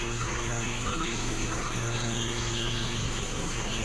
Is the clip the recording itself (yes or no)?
no